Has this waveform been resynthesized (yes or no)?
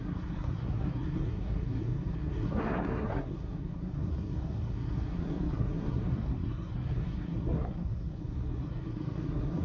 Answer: yes